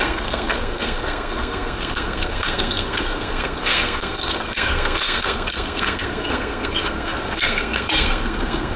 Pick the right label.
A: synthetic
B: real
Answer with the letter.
A